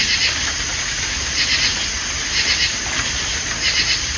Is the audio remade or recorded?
recorded